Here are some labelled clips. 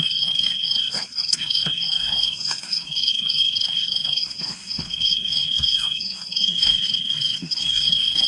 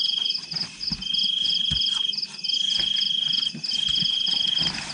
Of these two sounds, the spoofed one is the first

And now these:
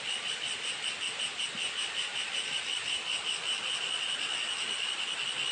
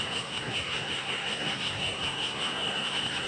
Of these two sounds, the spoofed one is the second